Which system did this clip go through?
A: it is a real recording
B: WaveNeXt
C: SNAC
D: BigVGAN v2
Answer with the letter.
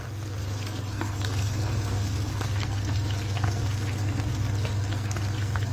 C